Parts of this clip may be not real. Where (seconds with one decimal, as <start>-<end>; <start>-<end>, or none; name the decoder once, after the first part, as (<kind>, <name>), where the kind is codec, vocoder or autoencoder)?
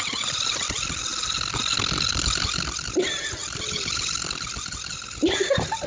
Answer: none